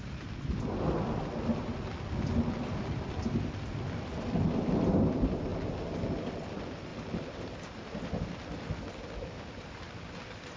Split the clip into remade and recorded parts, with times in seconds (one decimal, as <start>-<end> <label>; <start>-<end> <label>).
0.0-5.5 remade; 5.5-6.1 recorded; 6.1-6.9 remade; 6.9-7.5 recorded; 7.5-10.6 remade